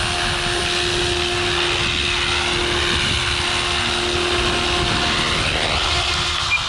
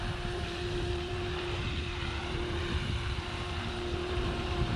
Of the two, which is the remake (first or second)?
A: second